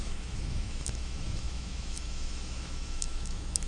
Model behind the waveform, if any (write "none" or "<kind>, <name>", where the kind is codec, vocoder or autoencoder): autoencoder, DAC-VAE